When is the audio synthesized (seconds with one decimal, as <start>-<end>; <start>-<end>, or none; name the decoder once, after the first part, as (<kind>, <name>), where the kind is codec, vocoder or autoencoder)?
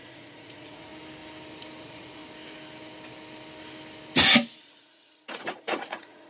0.0-0.9 (vocoder, Vocos); 1.8-2.2; 4.6-6.3